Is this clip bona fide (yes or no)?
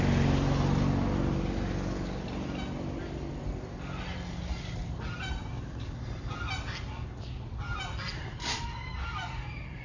yes